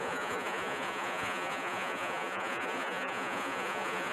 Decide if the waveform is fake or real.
fake